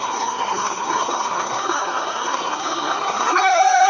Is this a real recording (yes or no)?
no